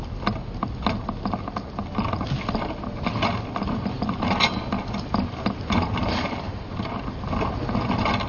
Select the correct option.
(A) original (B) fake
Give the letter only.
A